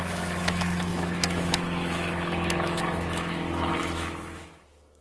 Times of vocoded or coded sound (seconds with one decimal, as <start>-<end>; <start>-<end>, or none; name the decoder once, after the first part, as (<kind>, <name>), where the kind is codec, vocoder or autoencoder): 0.0-5.0 (autoencoder, DAC-VAE)